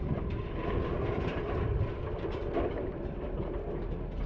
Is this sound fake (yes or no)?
no